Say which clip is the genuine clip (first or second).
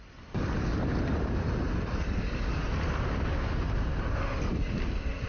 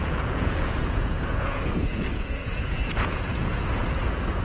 first